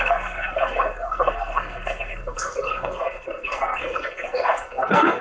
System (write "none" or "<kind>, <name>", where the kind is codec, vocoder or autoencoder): codec, SNAC